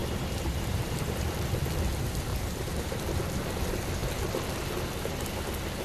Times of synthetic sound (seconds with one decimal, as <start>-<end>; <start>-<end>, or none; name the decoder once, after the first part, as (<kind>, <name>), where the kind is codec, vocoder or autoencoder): 0.0-1.5 (vocoder, BigVGAN v2); 2.3-2.9